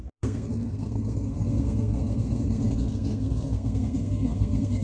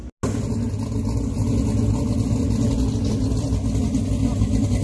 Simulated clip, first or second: first